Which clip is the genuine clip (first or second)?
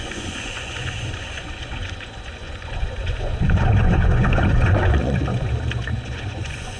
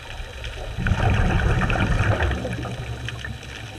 second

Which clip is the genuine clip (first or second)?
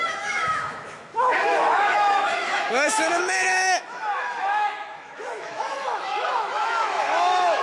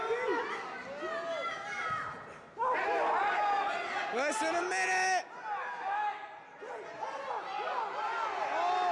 second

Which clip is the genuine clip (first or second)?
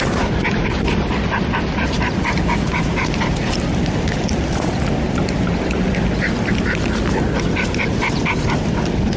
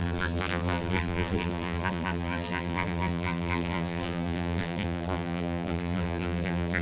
first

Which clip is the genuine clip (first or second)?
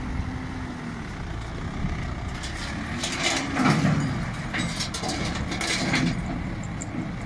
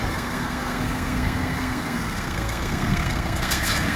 first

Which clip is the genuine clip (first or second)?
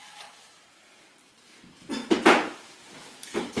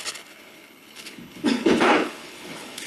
first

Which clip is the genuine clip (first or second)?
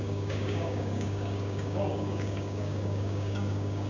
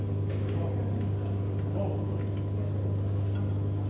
second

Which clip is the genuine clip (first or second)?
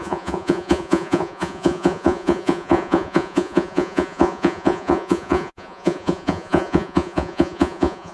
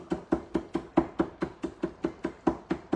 second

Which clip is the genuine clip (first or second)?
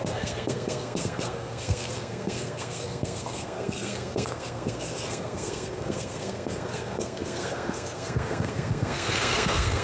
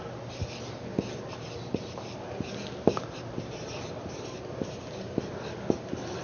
second